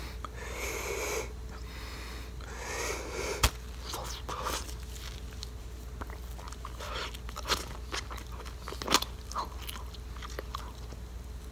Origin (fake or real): real